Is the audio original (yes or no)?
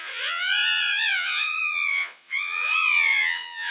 no